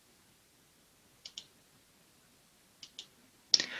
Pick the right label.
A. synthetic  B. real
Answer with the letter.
B